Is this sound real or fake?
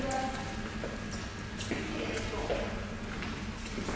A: real